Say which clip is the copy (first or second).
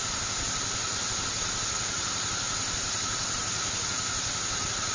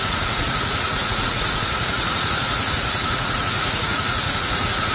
second